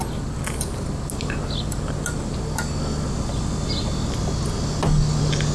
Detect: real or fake real